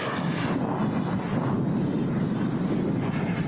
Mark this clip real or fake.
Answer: real